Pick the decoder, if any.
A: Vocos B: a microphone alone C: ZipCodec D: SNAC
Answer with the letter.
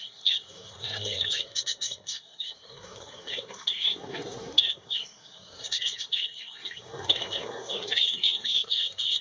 D